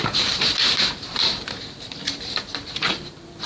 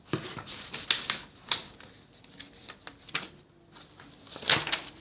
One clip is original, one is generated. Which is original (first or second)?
second